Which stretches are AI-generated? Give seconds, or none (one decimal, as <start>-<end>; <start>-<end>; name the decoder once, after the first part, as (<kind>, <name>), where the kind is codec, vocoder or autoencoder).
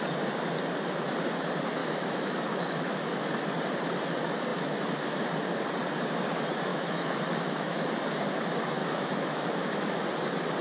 1.8-3.3 (autoencoder, DAC-VAE); 6.7-7.9; 8.8-10.0